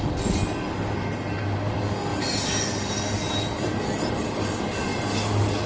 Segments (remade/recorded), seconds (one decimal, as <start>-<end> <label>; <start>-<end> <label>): 0.0-5.7 recorded